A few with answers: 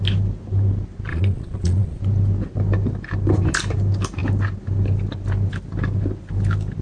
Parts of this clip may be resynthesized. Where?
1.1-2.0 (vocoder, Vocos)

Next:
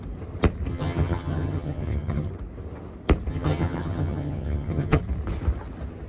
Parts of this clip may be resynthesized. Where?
0.7-2.3 (vocoder, HiFi-GAN); 3.3-5.0

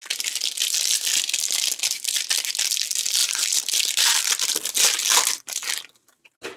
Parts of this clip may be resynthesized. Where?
3.2-4.2 (vocoder, BigVGAN v2)

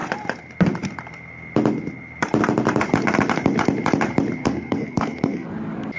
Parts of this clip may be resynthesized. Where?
4.4-5.5 (codec, SNAC)

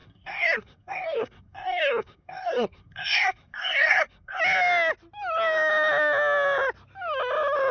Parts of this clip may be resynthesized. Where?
0.0-4.4 (codec, SNAC)